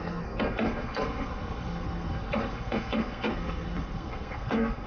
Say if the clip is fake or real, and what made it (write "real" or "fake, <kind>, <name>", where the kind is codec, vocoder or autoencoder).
fake, codec, SNAC